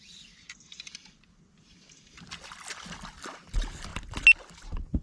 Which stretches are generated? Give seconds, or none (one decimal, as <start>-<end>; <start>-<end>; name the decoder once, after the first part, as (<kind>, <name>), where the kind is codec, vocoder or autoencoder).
0.0-3.9 (vocoder, BigVGAN v2)